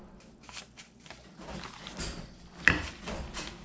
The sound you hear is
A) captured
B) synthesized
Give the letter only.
A